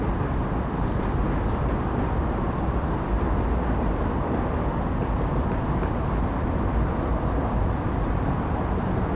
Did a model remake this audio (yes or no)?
no